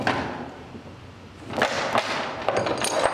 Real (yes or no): yes